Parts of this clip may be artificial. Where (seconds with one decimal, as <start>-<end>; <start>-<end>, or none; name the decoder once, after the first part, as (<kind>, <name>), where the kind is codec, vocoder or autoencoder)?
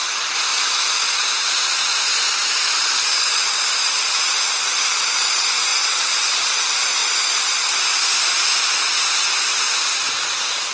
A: none